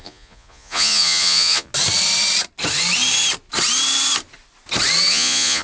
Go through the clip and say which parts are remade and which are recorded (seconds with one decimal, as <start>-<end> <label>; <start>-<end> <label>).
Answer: 0.0-1.7 remade; 1.7-5.1 recorded; 5.1-5.6 remade